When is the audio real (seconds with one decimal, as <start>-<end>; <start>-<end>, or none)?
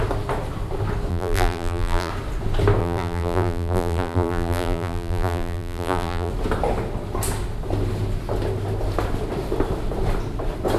0.0-1.1; 2.1-2.8; 6.3-10.8